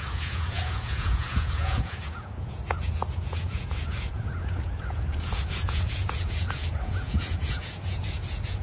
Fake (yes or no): yes